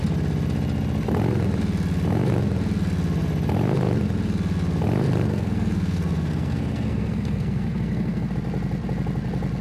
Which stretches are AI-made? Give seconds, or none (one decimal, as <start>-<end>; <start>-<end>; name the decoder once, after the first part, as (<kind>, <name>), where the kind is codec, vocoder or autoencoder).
5.3-8.3 (codec, SNAC)